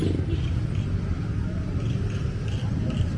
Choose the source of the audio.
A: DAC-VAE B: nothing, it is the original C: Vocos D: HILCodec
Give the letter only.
B